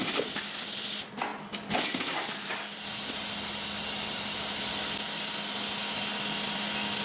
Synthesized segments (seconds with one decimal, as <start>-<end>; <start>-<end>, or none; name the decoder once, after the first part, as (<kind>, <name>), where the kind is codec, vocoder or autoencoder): none